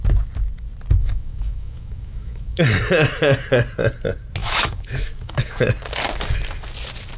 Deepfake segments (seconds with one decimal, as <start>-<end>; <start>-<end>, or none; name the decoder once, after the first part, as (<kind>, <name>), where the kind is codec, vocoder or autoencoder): 1.0-2.6 (autoencoder, DAC-VAE); 4.4-5.7